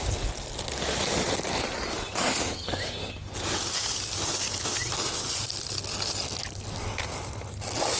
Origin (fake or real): real